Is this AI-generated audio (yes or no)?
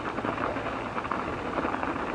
no